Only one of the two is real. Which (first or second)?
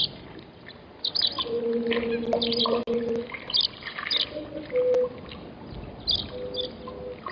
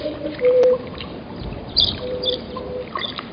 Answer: first